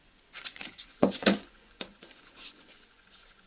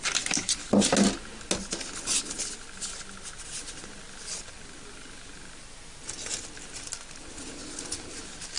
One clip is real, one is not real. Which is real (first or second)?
second